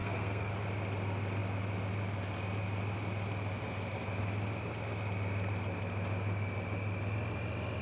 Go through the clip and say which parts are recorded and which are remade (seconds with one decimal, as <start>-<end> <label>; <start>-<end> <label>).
0.0-0.5 remade; 0.5-7.8 recorded